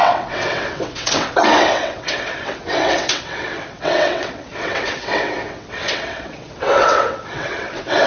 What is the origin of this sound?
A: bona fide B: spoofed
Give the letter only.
B